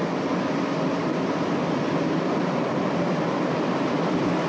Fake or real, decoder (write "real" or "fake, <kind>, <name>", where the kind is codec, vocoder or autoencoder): fake, vocoder, BigVGAN v2